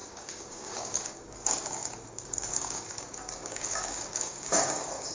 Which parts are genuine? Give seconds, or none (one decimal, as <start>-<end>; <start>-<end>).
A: none